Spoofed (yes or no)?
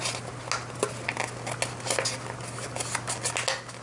no